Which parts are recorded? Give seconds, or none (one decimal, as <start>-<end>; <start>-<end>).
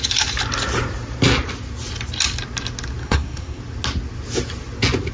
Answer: 0.0-3.0; 3.6-5.1